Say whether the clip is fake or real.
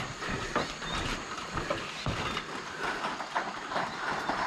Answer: real